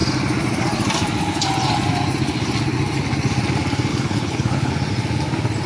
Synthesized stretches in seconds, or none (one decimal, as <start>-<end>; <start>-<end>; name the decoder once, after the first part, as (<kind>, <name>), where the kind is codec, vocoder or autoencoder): 3.9-4.7 (codec, HILCodec)